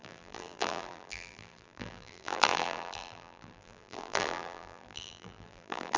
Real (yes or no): no